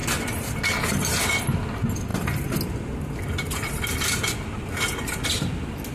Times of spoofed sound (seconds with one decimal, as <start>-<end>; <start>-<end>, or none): none